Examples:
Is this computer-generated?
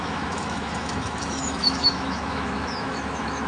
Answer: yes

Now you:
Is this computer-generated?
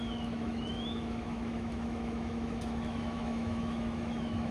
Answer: yes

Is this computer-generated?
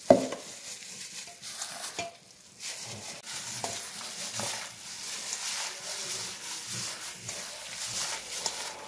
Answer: no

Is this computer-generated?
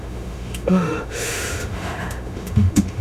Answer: yes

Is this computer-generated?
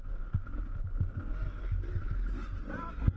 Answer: no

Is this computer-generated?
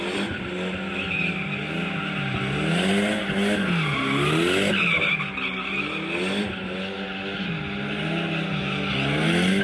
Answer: no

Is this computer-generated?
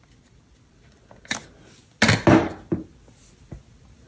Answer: no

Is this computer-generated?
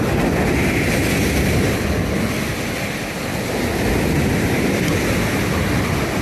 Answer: no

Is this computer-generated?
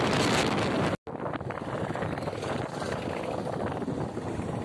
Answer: no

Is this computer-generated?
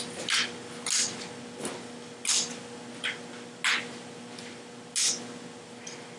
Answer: no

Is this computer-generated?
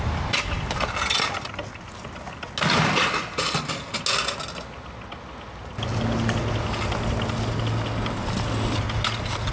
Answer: no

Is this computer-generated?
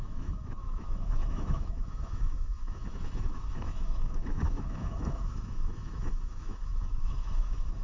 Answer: yes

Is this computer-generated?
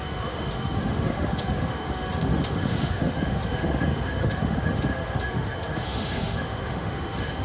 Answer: yes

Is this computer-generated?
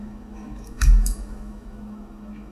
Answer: yes